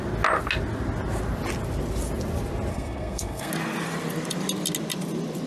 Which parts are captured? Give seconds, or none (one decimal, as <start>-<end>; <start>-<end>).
0.0-2.7; 3.5-5.5